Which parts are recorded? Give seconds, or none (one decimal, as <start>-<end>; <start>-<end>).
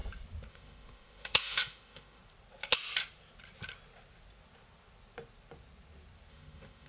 0.0-0.5; 2.2-6.3